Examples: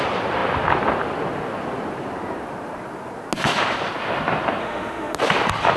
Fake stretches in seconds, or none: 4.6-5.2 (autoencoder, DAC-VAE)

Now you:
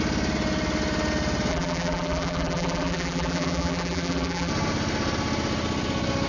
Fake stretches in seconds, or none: 1.5-4.5 (vocoder, BigVGAN v2)